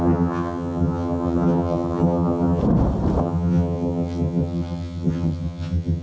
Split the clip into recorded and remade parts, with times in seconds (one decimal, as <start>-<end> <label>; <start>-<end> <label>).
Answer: 0.0-2.6 remade; 2.6-3.2 recorded; 3.2-6.0 remade